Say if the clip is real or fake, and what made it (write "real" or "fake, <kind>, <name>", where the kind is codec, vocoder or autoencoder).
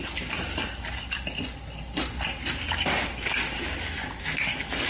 real